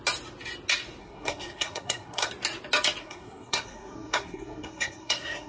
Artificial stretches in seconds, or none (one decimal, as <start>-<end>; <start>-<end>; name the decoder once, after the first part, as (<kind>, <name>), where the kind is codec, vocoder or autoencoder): 1.0-2.3 (codec, SNAC); 3.0-5.5